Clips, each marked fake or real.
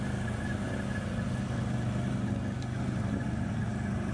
real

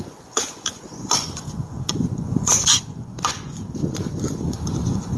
fake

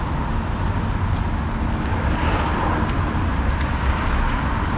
real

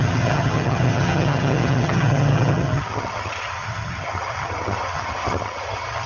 fake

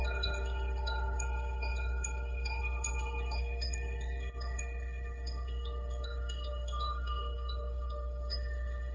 fake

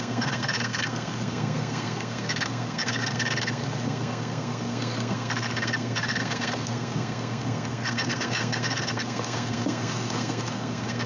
fake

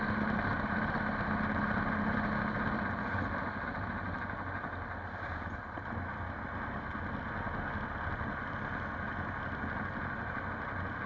real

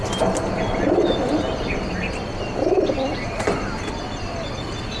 real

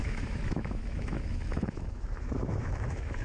fake